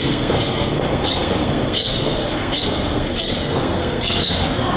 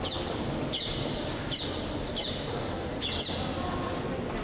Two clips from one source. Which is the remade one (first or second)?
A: first